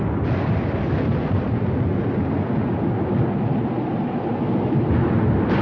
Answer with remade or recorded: recorded